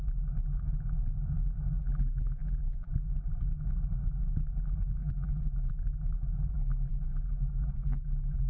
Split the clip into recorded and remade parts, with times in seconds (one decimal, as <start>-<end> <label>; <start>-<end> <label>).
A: 0.0-1.8 recorded; 1.8-2.9 remade; 2.9-5.0 recorded; 5.0-5.7 remade; 5.7-6.5 recorded; 6.5-8.5 remade